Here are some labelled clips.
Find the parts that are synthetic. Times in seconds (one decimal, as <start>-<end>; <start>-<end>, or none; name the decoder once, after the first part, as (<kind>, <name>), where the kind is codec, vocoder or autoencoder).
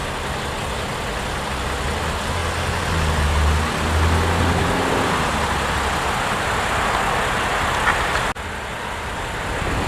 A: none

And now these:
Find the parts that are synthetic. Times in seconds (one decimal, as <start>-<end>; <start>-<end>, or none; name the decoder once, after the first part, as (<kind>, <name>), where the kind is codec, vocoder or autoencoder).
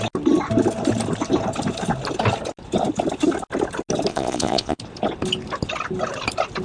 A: 4.1-4.8 (vocoder, Vocos)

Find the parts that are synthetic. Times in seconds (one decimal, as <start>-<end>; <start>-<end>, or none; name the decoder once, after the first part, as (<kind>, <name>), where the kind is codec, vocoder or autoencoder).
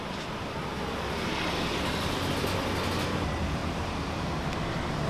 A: 3.6-4.3 (vocoder, BigVGAN v2)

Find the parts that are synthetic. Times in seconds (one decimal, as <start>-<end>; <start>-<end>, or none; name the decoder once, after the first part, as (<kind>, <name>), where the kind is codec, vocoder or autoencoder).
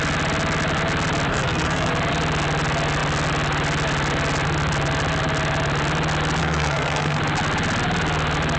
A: 1.3-1.9 (codec, SNAC); 6.4-7.2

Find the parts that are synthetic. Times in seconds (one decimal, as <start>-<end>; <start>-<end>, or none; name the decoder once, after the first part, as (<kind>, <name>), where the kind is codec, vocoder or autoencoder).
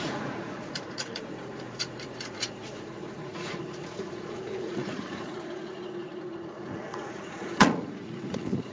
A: 0.0-8.7 (vocoder, Vocos)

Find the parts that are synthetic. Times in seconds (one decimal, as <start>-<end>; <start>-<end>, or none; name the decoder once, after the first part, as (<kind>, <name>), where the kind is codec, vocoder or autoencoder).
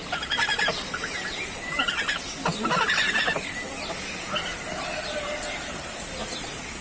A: none